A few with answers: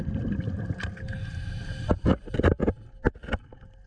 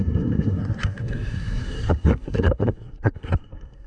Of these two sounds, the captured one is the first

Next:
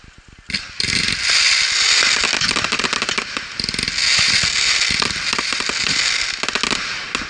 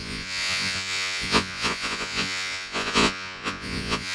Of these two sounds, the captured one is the first